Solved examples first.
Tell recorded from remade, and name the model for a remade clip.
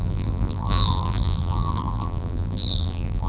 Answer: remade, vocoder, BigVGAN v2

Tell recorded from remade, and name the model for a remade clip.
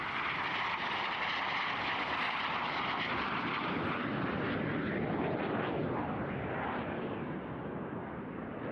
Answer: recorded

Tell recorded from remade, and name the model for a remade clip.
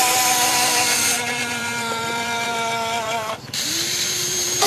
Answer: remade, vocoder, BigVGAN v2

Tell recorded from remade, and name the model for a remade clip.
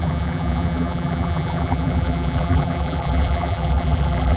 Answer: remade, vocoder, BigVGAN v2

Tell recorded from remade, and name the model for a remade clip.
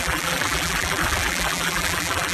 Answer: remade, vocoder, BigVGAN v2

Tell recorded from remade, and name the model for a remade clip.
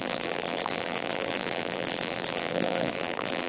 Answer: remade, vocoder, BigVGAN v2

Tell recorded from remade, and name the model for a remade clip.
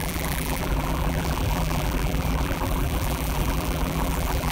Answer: remade, vocoder, BigVGAN v2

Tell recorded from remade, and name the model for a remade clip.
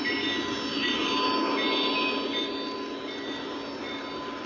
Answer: recorded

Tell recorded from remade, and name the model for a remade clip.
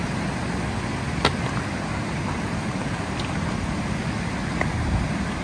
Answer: recorded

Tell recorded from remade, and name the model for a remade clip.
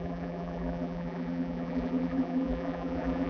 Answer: remade, vocoder, BigVGAN v2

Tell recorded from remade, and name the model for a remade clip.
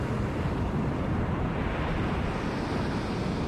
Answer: recorded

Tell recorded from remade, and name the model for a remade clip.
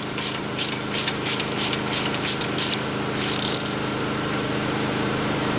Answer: remade, vocoder, BigVGAN v2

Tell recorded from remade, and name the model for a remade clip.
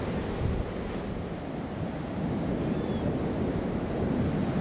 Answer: recorded